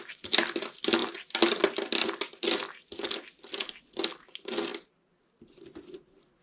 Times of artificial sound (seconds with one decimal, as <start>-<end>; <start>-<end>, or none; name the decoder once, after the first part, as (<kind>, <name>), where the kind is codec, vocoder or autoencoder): none